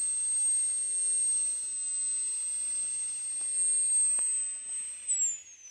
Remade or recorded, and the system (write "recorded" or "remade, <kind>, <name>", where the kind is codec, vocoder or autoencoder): recorded